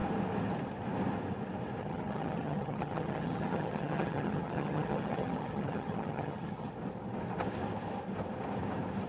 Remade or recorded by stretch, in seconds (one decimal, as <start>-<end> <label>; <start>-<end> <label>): 0.0-1.8 recorded; 1.8-6.7 remade; 6.7-9.1 recorded